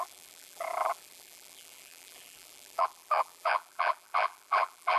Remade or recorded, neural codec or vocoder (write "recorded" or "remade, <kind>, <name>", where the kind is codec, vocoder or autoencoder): remade, vocoder, BigVGAN v2